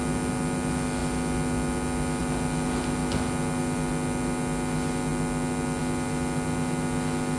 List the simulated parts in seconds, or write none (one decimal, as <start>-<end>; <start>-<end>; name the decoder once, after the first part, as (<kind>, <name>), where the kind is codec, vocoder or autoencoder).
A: none